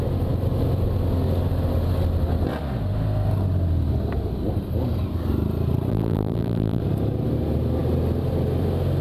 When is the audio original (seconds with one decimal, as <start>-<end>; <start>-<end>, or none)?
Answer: 0.0-5.9; 6.8-9.0